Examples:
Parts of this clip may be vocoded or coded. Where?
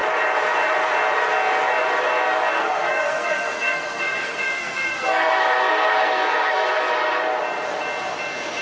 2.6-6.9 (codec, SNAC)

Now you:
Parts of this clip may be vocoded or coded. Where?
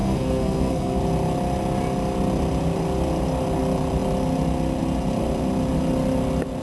0.0-1.0 (codec, SNAC)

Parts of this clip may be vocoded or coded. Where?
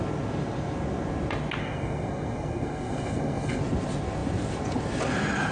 1.6-3.6 (codec, SNAC)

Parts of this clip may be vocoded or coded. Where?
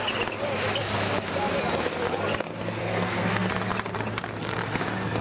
2.8-3.5 (codec, SNAC)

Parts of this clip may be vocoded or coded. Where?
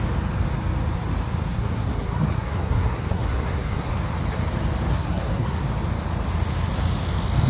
1.5-3.9 (codec, SNAC); 4.9-5.7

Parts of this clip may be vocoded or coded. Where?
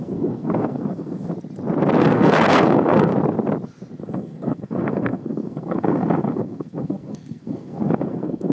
0.0-1.3 (codec, SNAC); 2.0-3.1; 4.0-8.5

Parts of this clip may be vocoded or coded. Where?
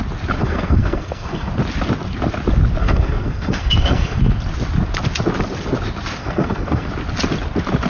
0.4-1.5 (codec, SNAC); 2.8-4.2; 6.2-6.9